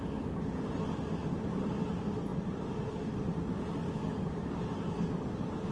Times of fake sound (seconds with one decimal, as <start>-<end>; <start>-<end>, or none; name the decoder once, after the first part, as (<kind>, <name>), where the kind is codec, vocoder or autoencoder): 1.2-1.9 (vocoder, BigVGAN v2); 2.3-4.5